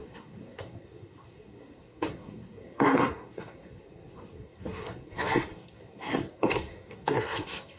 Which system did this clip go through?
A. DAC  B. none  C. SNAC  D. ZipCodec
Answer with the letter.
C